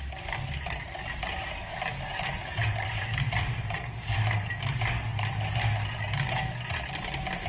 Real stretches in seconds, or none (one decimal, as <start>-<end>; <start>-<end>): 0.0-1.7; 4.5-7.5